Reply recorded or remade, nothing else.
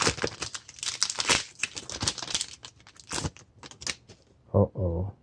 recorded